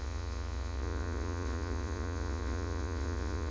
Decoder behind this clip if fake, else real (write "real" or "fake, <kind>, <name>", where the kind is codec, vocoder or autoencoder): fake, vocoder, Vocos